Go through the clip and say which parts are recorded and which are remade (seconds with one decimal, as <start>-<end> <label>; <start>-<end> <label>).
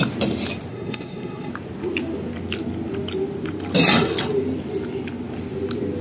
0.0-0.7 recorded; 0.7-1.5 remade; 1.5-6.0 recorded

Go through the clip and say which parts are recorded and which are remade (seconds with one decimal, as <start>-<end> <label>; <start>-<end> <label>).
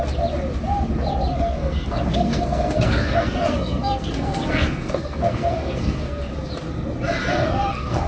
0.0-1.3 recorded; 1.3-6.2 remade; 6.2-7.3 recorded; 7.3-8.1 remade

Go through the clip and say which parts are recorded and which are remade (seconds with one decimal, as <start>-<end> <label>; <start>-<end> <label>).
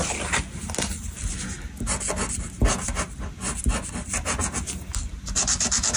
0.0-6.0 recorded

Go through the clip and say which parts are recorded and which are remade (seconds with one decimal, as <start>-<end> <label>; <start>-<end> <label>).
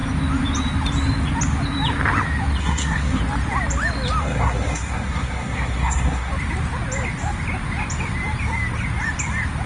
0.0-2.6 recorded; 2.6-3.2 remade; 3.2-4.2 recorded; 4.2-6.3 remade; 6.3-9.7 recorded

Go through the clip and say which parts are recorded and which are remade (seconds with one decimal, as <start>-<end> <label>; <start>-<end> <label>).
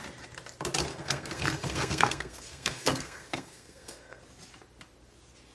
0.0-0.9 recorded; 0.9-4.2 remade; 4.2-5.5 recorded